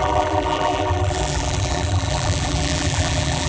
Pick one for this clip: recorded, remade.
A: remade